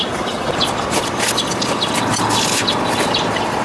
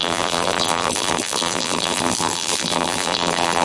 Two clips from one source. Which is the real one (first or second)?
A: first